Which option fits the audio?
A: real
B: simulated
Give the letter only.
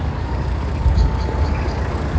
B